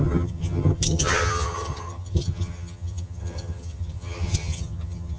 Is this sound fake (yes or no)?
yes